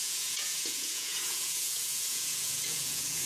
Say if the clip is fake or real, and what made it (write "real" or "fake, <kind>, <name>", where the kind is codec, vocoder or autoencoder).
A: fake, vocoder, Vocos